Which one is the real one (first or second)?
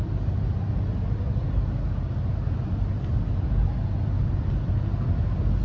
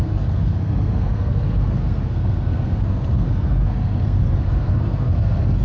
first